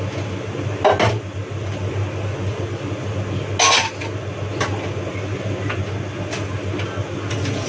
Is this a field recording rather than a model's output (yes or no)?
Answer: yes